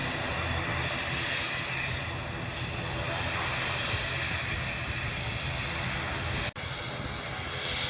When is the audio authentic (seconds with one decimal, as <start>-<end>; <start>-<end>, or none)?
0.0-7.9